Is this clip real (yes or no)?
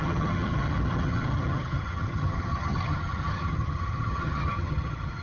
no